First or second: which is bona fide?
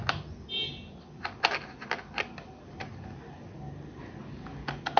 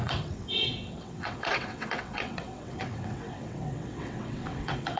first